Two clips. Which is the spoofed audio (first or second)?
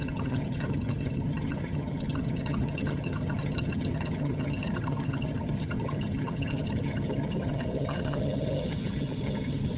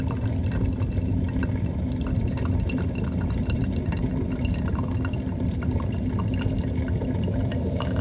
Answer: first